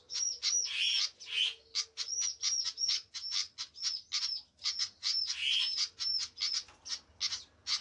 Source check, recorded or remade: recorded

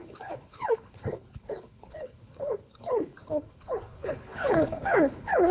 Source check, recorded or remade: remade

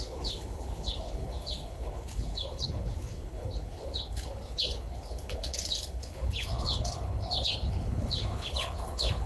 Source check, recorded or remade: remade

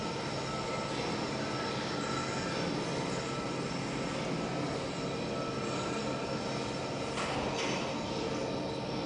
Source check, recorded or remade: recorded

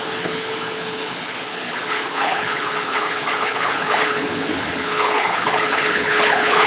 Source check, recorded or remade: remade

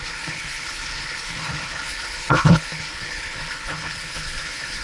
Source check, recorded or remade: remade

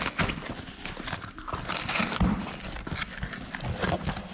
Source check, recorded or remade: recorded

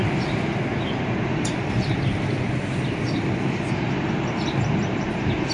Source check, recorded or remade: recorded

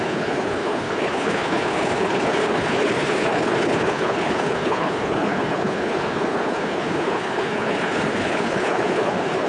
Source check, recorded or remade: remade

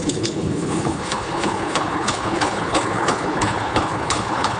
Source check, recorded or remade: remade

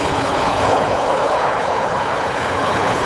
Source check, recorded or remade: remade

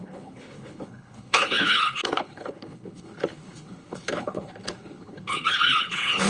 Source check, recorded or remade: remade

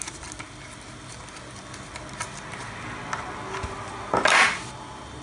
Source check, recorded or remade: recorded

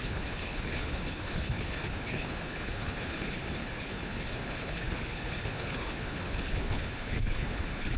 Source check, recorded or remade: remade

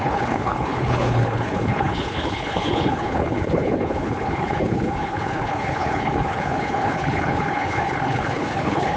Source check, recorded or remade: remade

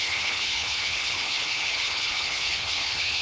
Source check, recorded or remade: remade